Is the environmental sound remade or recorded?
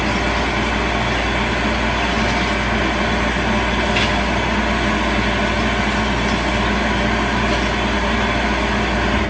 recorded